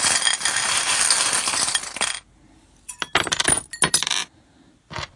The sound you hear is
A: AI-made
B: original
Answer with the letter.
B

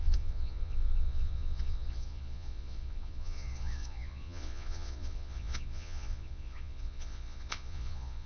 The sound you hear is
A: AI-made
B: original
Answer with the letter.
A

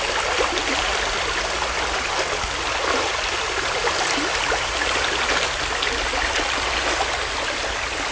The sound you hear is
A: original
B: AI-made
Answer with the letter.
A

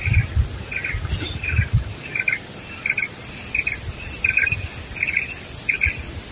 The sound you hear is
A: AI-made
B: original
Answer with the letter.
B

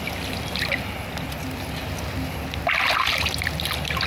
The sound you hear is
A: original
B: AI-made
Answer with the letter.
A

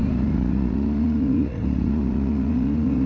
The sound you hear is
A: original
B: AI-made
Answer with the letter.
B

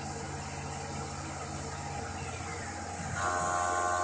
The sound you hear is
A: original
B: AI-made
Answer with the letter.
A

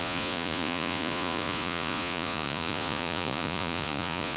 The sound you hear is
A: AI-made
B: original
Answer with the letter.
A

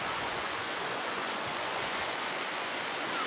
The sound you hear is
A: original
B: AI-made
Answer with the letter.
B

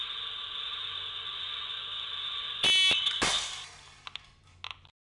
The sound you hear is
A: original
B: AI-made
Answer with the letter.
A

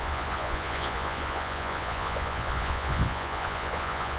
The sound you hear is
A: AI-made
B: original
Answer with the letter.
A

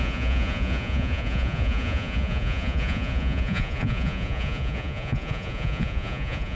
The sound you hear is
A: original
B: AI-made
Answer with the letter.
B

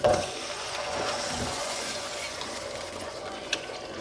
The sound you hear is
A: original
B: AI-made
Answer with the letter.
B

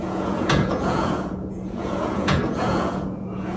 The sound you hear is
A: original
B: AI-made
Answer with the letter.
B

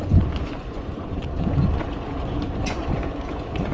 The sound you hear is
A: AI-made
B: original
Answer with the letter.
A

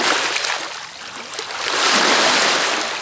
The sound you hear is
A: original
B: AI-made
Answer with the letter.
A